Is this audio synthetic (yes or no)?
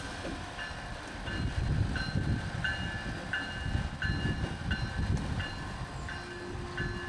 no